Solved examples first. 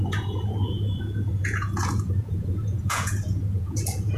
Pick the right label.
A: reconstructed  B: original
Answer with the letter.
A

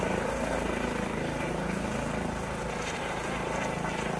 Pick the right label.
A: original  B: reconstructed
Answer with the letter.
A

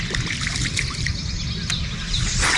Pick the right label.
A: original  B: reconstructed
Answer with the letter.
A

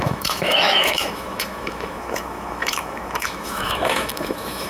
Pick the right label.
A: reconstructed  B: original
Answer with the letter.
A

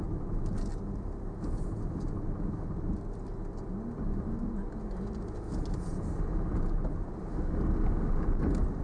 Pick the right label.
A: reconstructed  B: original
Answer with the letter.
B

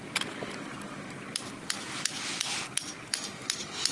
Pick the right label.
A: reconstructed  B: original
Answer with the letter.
B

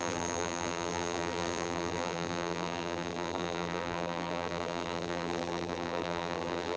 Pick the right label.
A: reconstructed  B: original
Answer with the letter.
A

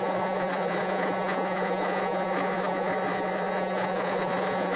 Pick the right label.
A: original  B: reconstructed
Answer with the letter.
B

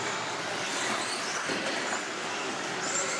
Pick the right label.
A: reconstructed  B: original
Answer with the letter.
B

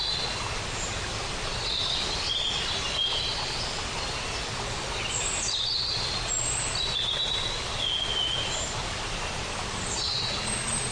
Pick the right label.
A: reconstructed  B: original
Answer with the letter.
B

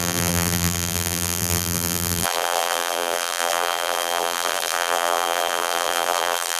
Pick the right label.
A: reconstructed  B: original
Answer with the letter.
A